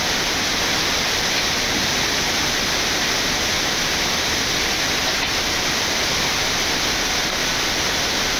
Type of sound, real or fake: real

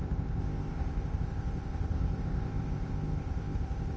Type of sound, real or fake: fake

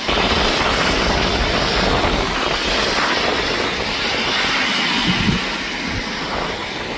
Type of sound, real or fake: real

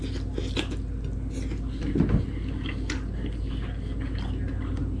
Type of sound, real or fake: real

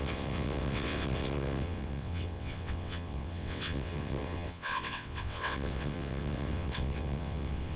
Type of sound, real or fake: fake